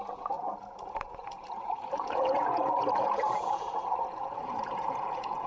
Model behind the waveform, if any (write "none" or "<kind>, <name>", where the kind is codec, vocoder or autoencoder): vocoder, Vocos